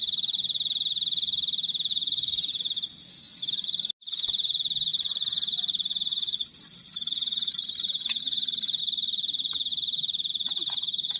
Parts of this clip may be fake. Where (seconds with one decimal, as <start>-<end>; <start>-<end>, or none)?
1.9-2.6